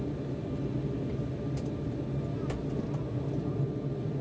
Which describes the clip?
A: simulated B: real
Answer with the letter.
B